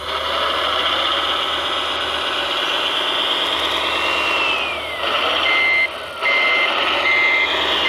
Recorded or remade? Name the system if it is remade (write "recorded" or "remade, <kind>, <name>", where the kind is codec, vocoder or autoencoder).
recorded